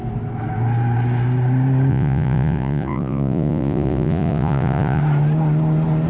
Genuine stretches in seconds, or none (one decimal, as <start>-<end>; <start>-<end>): 0.0-1.9; 5.0-6.1